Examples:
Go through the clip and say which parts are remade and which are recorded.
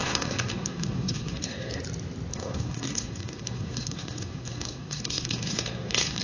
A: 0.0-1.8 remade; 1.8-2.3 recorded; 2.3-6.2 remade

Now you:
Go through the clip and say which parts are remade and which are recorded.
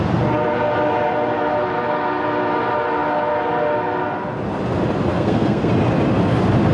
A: 0.0-5.1 recorded; 5.1-5.7 remade; 5.7-6.7 recorded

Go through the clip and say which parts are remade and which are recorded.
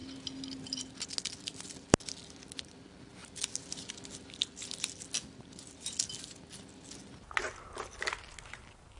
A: 0.0-9.0 recorded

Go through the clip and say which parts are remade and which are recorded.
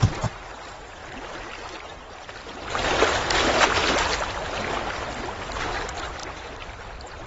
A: 0.0-7.3 recorded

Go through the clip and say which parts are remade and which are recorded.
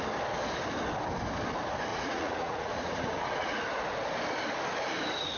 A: 0.0-1.9 recorded; 1.9-3.6 remade; 3.6-5.4 recorded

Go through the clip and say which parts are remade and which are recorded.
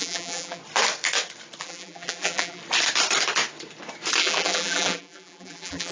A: 0.0-0.6 remade; 0.6-1.6 recorded; 1.6-2.6 remade; 2.6-4.2 recorded; 4.2-5.9 remade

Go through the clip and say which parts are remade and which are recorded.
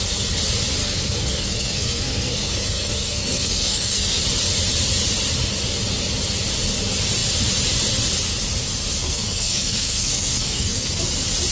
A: 0.0-0.8 recorded; 0.8-4.2 remade; 4.2-9.0 recorded; 9.0-11.0 remade; 11.0-11.5 recorded